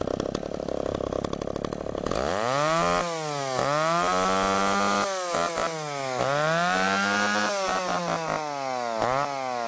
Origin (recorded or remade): recorded